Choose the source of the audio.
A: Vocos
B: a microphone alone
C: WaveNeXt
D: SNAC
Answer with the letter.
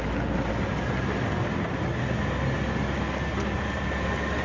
B